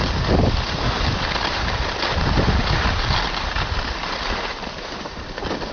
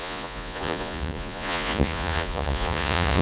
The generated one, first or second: second